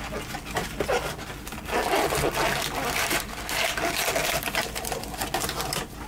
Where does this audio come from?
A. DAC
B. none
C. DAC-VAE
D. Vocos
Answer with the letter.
B